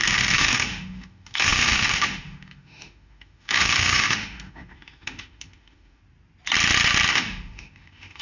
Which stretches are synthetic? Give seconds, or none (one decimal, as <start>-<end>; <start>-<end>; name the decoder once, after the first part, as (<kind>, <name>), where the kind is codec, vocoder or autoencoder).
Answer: 0.0-6.0 (autoencoder, DAC-VAE); 7.1-8.2

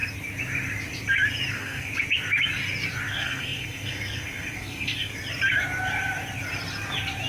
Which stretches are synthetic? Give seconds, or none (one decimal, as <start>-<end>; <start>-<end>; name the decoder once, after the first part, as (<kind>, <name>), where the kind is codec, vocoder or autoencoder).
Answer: 1.5-1.9 (codec, SNAC); 3.1-5.1

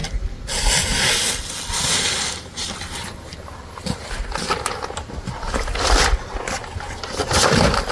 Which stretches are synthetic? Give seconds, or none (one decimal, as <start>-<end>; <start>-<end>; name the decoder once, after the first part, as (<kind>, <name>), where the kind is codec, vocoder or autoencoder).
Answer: none

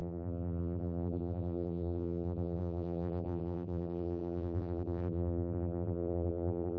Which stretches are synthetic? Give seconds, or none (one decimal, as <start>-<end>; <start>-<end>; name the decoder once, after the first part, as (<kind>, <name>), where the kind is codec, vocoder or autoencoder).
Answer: 0.0-6.8 (vocoder, BigVGAN v2)

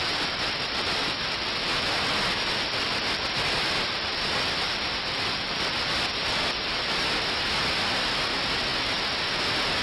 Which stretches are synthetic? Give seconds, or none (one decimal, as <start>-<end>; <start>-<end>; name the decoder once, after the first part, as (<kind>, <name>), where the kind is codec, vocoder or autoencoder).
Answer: none

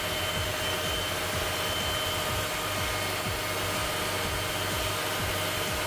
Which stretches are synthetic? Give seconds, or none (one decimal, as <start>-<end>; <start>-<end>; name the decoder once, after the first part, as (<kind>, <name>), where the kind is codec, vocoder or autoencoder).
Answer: none